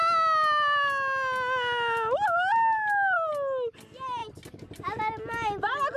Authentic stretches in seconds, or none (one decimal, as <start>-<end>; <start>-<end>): 0.0-6.0